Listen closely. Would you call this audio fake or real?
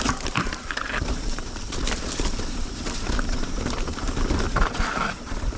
fake